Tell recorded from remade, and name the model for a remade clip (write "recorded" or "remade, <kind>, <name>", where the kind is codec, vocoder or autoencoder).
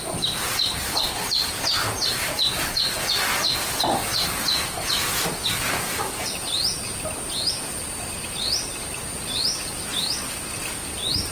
recorded